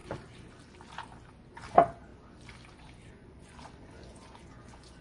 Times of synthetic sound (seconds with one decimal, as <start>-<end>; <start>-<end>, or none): 1.7-2.1; 3.1-5.0